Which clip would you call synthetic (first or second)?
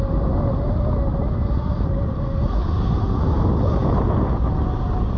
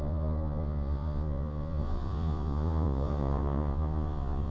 second